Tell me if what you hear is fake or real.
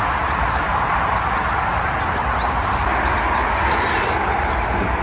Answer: real